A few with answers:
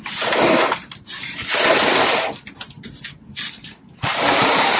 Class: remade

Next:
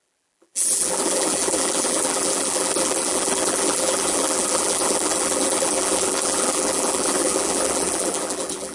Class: remade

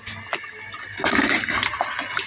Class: recorded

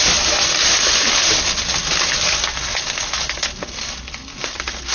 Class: recorded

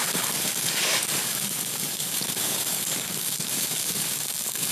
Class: remade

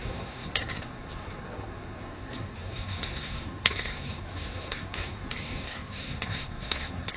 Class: remade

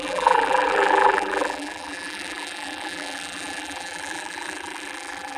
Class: remade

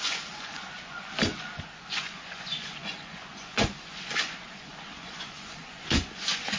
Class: remade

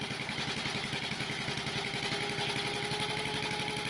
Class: recorded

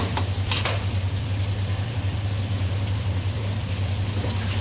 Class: remade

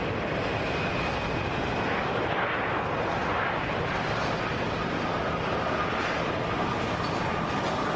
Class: recorded